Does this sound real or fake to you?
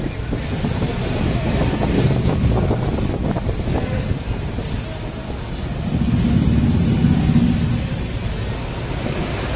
real